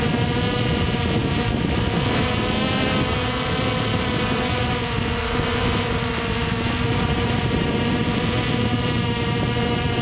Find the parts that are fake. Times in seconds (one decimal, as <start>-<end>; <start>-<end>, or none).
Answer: 6.9-7.7

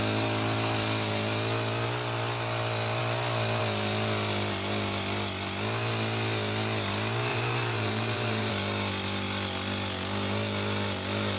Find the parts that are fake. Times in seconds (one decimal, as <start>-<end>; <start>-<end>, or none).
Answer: 7.3-8.5

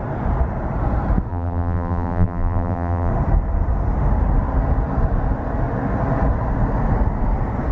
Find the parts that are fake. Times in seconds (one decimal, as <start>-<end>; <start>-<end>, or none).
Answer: 1.3-3.1